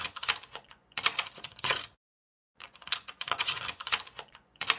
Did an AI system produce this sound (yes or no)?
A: yes